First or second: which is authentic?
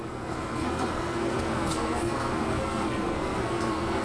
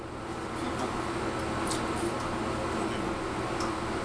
second